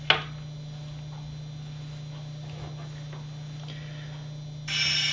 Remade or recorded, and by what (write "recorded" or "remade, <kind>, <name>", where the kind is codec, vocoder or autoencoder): recorded